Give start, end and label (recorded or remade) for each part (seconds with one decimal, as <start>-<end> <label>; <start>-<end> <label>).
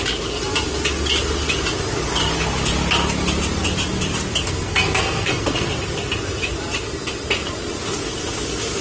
0.0-4.3 recorded; 4.3-5.7 remade; 5.7-8.8 recorded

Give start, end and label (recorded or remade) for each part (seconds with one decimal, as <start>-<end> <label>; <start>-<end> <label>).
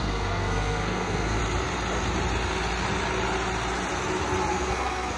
0.0-1.4 remade; 1.4-4.5 recorded; 4.5-5.2 remade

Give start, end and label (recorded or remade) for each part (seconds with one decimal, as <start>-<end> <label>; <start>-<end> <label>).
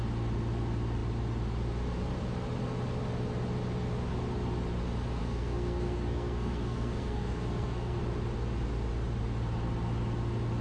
0.0-5.2 recorded; 5.2-8.0 remade; 8.0-10.6 recorded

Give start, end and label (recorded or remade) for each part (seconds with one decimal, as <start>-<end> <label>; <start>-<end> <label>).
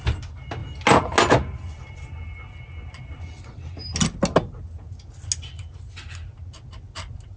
0.0-7.4 recorded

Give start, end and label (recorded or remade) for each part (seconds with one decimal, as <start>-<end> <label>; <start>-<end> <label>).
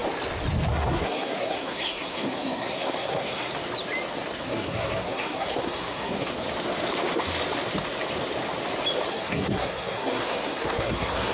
0.0-0.7 recorded; 0.7-3.5 remade; 3.5-4.4 recorded; 4.4-6.3 remade; 6.3-9.1 recorded; 9.1-11.3 remade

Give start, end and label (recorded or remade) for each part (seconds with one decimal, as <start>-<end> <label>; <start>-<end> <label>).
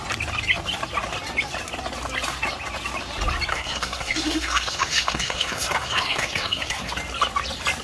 0.0-3.5 recorded; 3.5-6.9 remade; 6.9-7.8 recorded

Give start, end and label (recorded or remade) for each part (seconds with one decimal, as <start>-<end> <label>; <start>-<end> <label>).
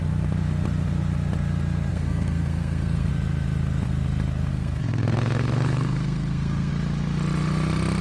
0.0-1.9 recorded; 1.9-3.1 remade; 3.1-4.5 recorded; 4.5-6.7 remade; 6.7-8.0 recorded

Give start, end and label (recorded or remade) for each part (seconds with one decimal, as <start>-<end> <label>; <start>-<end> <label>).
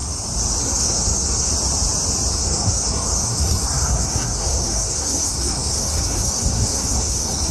0.0-0.6 recorded; 0.6-1.5 remade; 1.5-2.3 recorded; 2.3-7.5 remade